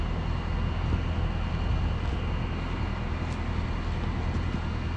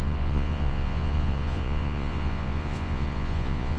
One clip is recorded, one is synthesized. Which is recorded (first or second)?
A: first